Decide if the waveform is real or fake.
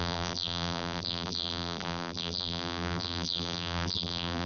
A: fake